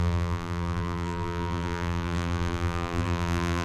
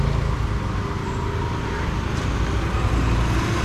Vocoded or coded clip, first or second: first